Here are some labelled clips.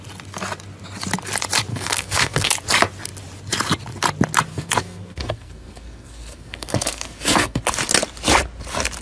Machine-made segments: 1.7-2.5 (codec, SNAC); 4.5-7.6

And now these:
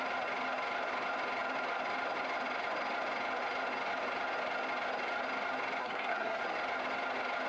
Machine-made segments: 5.8-6.4 (codec, SNAC)

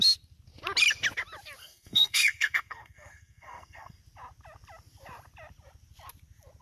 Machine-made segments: 1.6-4.0 (codec, SNAC)